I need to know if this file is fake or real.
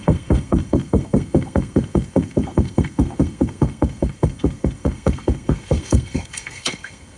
fake